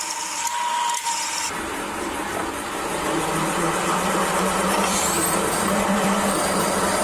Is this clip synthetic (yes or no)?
yes